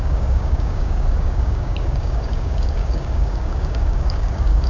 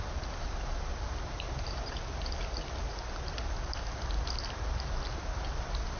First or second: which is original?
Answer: second